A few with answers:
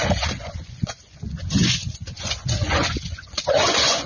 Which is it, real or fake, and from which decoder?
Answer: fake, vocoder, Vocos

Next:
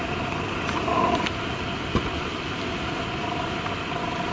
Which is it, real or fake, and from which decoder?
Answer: real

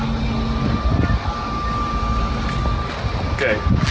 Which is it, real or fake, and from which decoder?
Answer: real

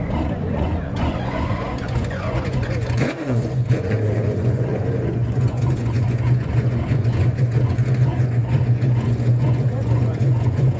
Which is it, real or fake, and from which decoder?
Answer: fake, vocoder, Vocos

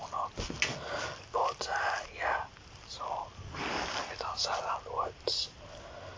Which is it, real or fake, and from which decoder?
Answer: real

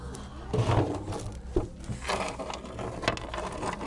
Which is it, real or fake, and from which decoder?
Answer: real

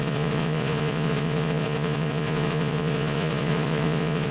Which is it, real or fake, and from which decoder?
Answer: fake, vocoder, Vocos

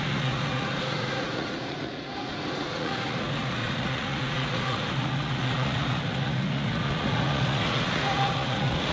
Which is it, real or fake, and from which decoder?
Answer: fake, vocoder, Vocos